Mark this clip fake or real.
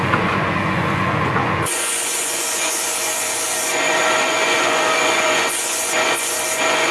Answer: fake